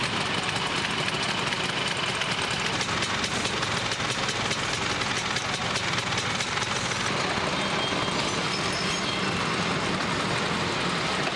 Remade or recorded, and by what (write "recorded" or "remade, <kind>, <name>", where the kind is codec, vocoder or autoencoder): recorded